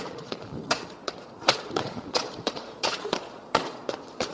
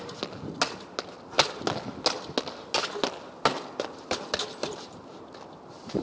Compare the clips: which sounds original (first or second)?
second